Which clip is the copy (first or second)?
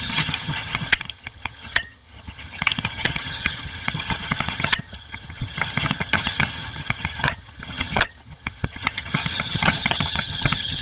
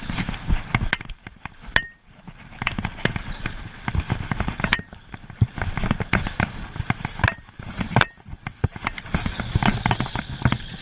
first